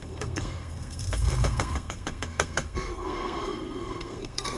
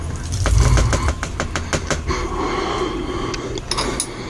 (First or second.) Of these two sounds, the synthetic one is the first